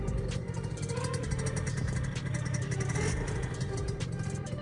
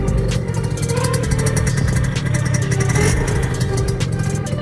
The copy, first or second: first